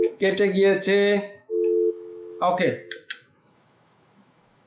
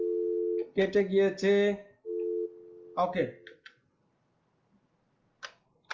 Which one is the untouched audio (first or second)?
second